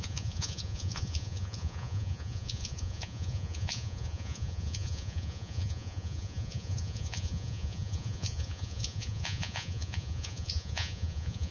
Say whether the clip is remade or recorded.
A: remade